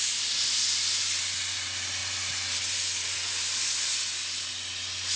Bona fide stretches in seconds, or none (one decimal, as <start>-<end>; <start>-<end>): 0.0-5.2